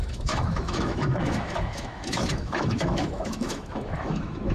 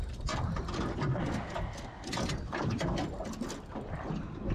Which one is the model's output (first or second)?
first